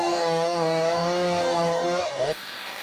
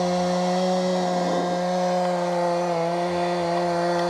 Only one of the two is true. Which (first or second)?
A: second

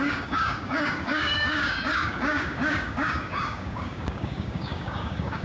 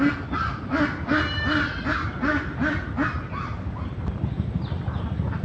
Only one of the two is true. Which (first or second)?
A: second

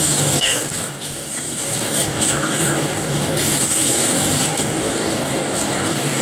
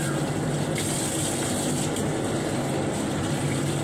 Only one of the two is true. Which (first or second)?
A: second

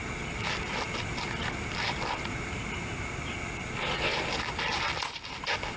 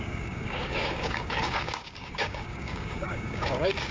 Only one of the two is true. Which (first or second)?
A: first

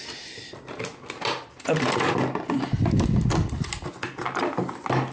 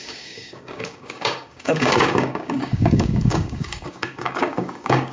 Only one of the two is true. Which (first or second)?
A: first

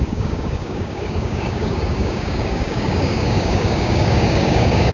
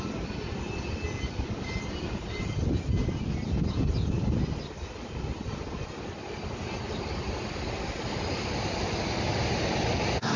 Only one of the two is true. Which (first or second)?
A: second